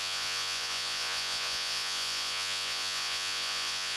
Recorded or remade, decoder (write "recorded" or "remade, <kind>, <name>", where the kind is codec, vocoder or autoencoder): remade, vocoder, Vocos